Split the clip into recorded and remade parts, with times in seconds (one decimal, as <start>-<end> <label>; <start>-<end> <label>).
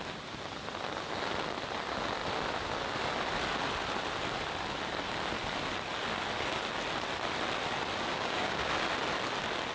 0.0-8.1 recorded; 8.1-8.7 remade; 8.7-9.7 recorded